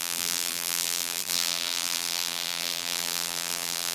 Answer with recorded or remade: remade